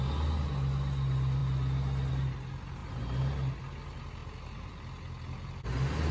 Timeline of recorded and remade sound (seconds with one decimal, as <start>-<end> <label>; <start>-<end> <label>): 0.0-6.1 recorded